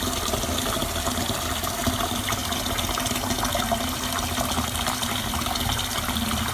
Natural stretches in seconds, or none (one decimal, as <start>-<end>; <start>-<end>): 0.0-6.5